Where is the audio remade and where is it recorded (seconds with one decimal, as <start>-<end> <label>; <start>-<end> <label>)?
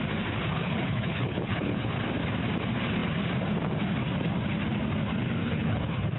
0.0-0.6 recorded; 0.6-2.0 remade; 2.0-5.4 recorded; 5.4-6.2 remade